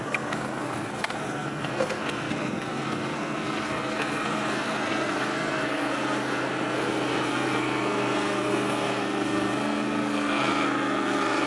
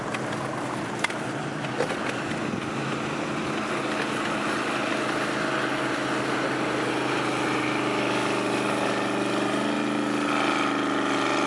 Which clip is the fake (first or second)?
first